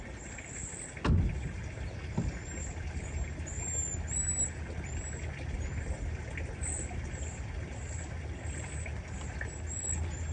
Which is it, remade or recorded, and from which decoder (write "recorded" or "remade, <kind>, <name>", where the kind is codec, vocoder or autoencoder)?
recorded